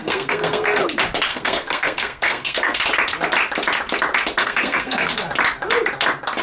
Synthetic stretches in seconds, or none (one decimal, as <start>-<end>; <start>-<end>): 0.0-0.8; 1.3-2.8; 4.4-5.1